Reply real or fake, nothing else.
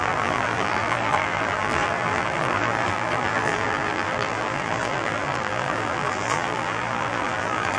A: fake